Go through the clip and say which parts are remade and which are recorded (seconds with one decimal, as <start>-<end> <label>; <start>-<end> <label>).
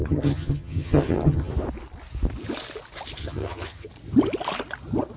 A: 0.0-1.5 remade; 1.5-3.2 recorded; 3.2-3.9 remade; 3.9-5.2 recorded